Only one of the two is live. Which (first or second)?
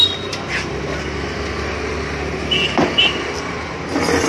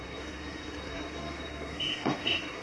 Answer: first